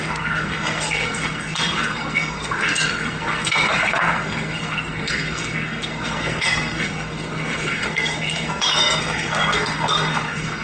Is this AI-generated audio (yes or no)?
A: yes